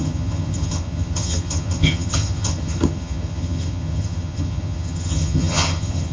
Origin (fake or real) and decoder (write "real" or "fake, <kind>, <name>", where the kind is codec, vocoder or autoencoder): fake, vocoder, HiFi-GAN